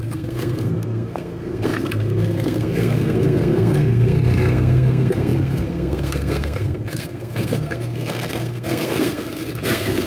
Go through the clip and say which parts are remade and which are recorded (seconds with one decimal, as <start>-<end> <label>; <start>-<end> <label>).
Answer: 0.0-10.1 remade